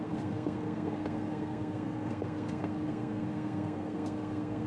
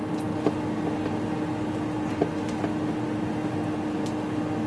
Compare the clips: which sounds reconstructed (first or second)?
first